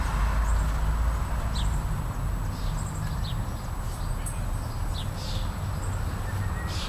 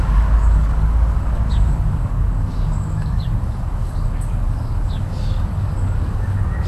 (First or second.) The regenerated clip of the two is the second